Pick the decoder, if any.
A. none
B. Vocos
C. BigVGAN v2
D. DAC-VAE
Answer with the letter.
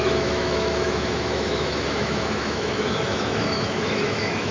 D